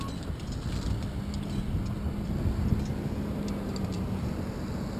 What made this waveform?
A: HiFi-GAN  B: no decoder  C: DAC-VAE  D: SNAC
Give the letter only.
B